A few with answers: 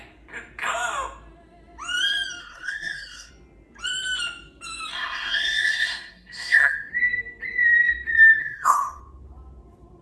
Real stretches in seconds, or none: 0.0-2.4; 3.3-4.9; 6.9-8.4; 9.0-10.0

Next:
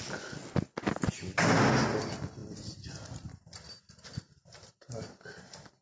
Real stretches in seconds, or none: 0.0-5.8

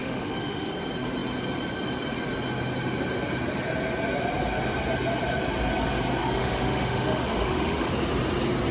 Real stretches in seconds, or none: 0.7-6.2; 7.9-8.7

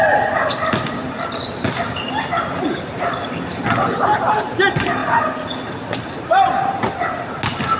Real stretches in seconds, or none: 0.0-7.8